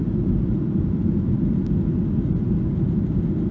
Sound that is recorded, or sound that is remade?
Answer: recorded